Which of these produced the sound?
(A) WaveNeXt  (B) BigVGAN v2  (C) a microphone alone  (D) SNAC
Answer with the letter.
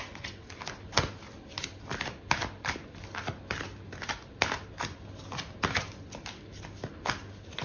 C